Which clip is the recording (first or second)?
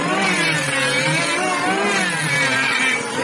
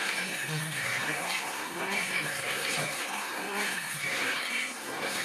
first